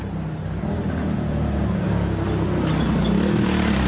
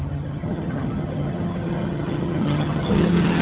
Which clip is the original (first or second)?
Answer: first